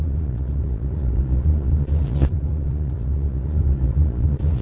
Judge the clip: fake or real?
fake